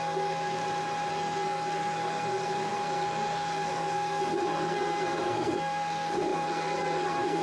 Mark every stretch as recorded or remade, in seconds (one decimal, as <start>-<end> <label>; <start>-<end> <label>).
0.0-0.6 remade; 0.6-1.1 recorded; 1.1-7.4 remade